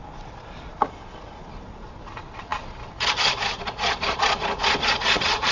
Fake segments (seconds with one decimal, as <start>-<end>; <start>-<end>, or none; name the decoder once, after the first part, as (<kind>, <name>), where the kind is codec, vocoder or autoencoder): 0.0-5.5 (vocoder, Vocos)